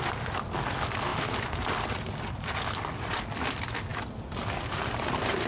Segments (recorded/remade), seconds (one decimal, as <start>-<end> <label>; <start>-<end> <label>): 0.0-5.5 recorded